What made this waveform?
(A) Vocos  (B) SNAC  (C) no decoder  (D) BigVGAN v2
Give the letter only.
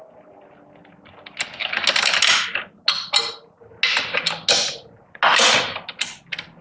C